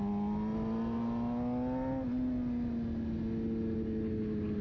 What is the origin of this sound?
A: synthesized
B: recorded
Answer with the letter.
B